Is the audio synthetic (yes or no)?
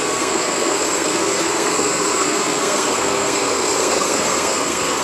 yes